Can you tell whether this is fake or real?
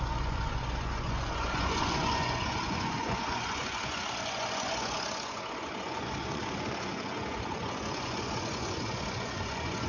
fake